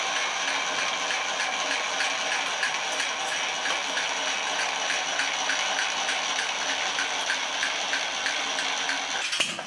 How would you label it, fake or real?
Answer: real